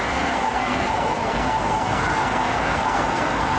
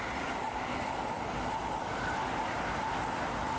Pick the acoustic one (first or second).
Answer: second